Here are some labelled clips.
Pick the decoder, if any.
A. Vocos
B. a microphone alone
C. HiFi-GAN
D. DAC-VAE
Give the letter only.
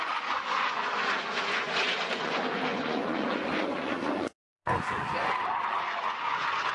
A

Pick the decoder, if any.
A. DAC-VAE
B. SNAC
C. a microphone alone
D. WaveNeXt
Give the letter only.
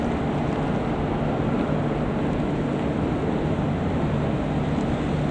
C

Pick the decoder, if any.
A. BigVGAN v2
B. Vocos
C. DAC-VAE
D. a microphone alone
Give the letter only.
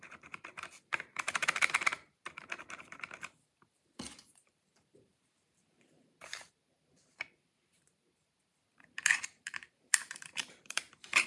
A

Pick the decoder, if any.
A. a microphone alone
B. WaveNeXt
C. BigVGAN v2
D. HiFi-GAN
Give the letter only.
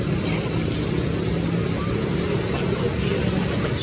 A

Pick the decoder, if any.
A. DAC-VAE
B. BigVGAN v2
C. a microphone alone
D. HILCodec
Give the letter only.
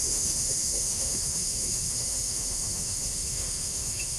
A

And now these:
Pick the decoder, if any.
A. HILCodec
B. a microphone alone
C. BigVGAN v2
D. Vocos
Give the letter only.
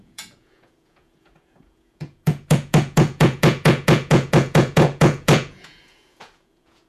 D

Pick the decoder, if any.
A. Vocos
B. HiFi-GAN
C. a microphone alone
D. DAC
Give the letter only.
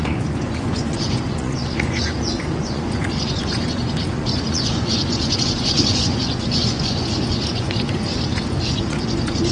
A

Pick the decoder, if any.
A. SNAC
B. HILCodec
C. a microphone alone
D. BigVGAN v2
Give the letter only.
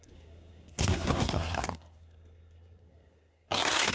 A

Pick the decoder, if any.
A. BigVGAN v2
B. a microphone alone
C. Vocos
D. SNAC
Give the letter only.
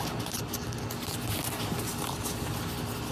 B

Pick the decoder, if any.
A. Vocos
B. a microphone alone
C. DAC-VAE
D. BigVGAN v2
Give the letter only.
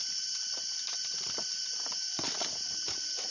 B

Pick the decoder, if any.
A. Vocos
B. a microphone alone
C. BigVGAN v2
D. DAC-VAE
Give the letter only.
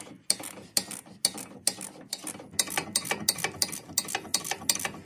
B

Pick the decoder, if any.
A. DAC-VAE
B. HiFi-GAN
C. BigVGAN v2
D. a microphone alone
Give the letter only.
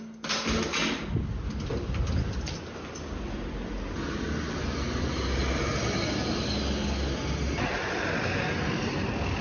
D